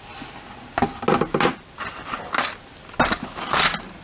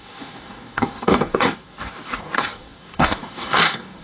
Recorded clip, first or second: first